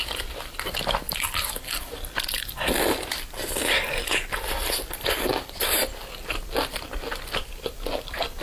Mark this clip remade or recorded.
recorded